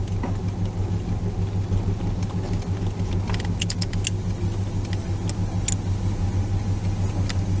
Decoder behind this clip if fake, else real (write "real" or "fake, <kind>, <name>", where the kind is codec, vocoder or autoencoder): real